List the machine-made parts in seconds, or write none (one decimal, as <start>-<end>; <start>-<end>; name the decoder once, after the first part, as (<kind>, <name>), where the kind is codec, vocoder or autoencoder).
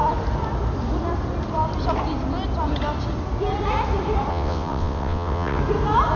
4.3-5.6 (vocoder, WaveNeXt)